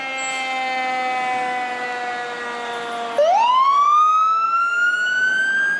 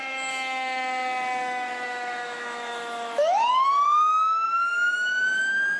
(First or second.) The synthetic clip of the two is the second